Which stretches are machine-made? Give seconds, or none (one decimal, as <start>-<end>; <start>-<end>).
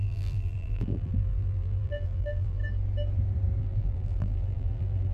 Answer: 0.0-2.6; 3.6-5.1